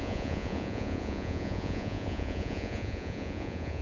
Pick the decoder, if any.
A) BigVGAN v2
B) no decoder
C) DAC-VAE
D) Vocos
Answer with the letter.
D